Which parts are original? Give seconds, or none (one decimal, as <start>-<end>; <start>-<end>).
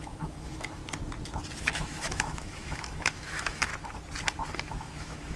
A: 0.8-1.6; 3.7-4.7